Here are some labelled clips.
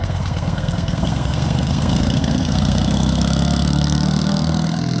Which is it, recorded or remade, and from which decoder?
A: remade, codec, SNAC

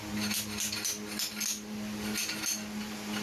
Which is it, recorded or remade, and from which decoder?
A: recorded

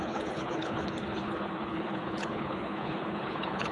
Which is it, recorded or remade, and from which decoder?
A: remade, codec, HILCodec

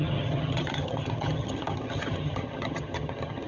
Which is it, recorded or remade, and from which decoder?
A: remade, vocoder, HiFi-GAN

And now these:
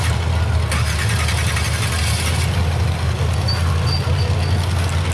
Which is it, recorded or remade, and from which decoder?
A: recorded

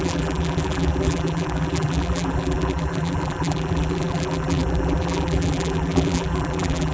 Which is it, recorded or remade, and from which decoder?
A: remade, vocoder, BigVGAN v2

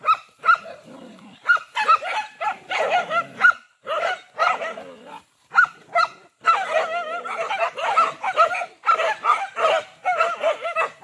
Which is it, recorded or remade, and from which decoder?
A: recorded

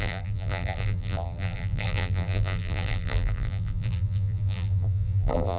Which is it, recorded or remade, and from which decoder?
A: remade, vocoder, BigVGAN v2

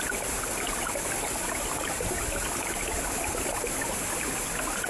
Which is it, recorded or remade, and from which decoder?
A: recorded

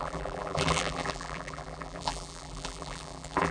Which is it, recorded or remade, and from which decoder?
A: remade, vocoder, BigVGAN v2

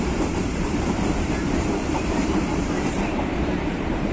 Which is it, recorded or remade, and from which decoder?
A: remade, vocoder, BigVGAN v2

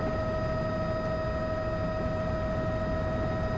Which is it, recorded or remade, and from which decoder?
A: recorded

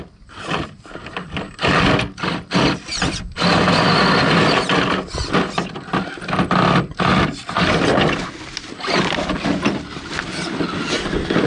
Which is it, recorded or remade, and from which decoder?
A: recorded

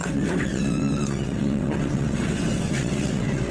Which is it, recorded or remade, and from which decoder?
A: remade, vocoder, WaveNeXt